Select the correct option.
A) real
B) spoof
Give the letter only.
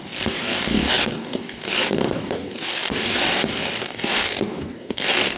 B